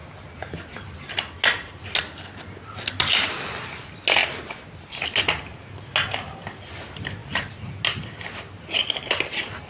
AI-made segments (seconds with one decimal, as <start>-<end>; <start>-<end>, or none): none